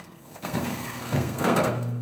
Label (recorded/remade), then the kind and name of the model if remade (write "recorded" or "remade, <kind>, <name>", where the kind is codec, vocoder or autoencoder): remade, codec, SNAC